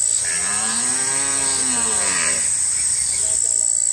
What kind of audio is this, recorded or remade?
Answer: recorded